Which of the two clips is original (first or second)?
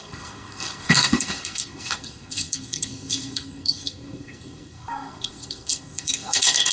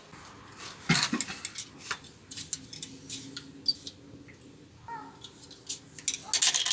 second